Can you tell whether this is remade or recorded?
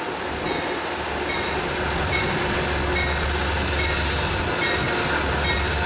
recorded